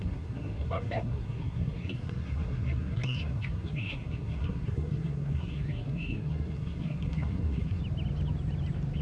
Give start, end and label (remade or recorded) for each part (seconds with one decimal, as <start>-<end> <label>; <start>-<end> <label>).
0.0-7.8 remade; 7.8-9.0 recorded